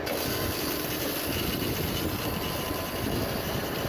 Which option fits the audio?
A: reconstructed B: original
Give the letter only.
B